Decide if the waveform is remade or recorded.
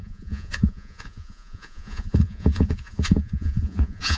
remade